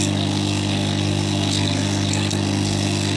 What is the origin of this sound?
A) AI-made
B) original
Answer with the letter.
A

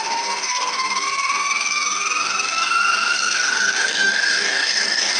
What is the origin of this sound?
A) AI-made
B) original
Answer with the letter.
A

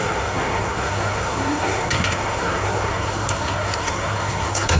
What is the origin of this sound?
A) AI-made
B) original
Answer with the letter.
A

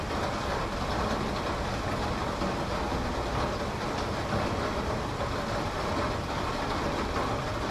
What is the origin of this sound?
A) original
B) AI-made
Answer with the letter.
A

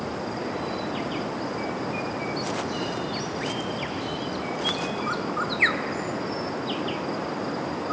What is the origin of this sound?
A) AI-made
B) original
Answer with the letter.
B